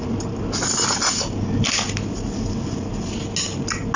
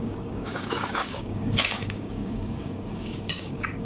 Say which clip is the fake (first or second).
second